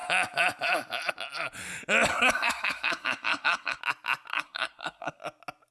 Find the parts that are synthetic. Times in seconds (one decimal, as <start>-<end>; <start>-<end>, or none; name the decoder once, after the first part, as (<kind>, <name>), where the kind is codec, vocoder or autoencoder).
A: 2.1-3.8 (codec, SNAC); 4.3-5.2